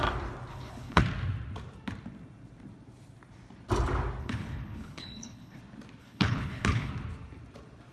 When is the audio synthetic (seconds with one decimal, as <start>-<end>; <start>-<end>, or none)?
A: 0.5-1.0; 4.2-5.6; 6.0-6.9